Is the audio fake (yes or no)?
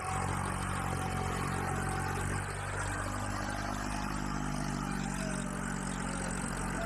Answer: no